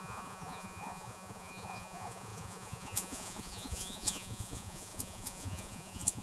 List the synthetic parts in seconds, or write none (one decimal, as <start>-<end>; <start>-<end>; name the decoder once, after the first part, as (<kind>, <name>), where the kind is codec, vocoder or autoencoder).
0.0-6.2 (vocoder, Vocos)

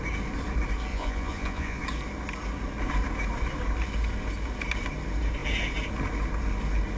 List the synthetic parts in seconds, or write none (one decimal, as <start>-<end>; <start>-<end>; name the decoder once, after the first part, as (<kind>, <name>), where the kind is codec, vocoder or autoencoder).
0.9-1.8 (vocoder, Vocos)

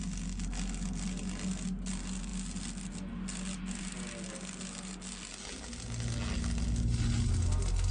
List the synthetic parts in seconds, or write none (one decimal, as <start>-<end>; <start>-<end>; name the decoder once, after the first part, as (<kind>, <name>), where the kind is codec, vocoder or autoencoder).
none

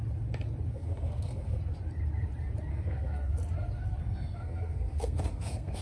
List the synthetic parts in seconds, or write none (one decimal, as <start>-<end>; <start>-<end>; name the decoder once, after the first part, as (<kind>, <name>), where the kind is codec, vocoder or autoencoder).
0.7-1.6 (codec, SNAC); 2.7-3.3; 4.0-5.8